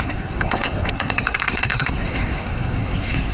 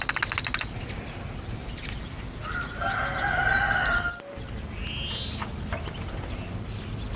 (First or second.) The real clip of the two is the second